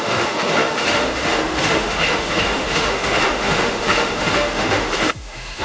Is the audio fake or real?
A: fake